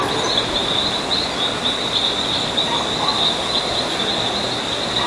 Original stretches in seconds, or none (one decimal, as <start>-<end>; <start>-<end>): 0.0-5.1